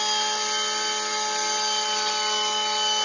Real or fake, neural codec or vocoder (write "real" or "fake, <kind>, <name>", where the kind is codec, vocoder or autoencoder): real